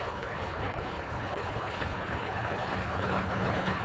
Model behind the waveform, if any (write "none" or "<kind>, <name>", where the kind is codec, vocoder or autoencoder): codec, HILCodec